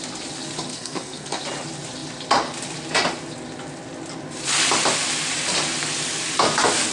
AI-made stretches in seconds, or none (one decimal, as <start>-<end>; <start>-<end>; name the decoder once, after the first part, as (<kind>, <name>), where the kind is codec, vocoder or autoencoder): 0.7-1.4 (codec, SNAC)